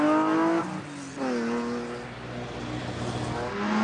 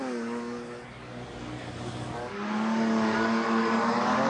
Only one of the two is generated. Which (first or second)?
second